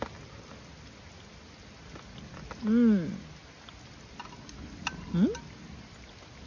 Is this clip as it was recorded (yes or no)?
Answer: yes